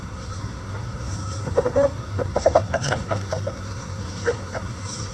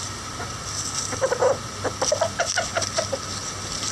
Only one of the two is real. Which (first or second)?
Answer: second